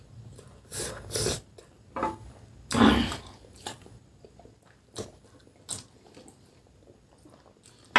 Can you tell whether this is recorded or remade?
recorded